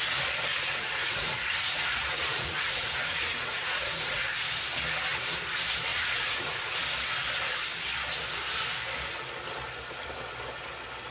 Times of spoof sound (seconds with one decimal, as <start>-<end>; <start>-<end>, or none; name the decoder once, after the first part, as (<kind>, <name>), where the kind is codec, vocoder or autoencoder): 0.5-4.2 (vocoder, Vocos); 5.9-6.8